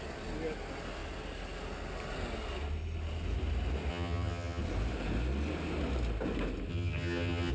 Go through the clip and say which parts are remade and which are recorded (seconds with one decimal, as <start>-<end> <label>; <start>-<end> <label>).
0.0-3.9 recorded; 3.9-4.6 remade; 4.6-6.7 recorded; 6.7-7.5 remade

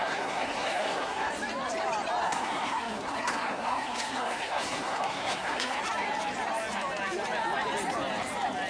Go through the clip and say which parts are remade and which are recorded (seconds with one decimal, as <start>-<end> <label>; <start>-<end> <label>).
0.0-1.3 remade; 1.3-2.2 recorded; 2.2-5.8 remade; 5.8-8.7 recorded

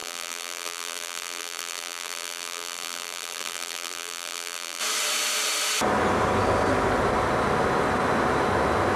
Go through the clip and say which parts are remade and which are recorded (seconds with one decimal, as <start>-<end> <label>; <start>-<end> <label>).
0.0-4.8 remade; 4.8-9.0 recorded

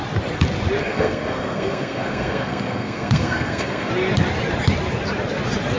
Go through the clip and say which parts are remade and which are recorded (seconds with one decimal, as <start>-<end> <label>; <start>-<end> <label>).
0.0-0.8 recorded; 0.8-3.9 remade; 3.9-5.8 recorded

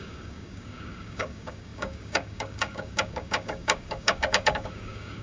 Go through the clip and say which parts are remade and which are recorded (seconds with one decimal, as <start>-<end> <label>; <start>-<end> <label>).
0.0-5.2 remade